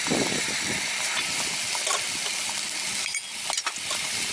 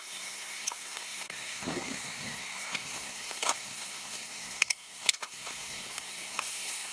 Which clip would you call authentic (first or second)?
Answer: first